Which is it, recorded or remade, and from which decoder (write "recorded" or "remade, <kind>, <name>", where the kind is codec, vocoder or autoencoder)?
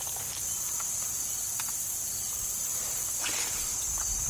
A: recorded